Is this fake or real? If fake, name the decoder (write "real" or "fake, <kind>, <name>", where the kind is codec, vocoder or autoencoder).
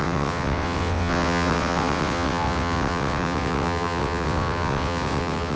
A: fake, vocoder, WaveNeXt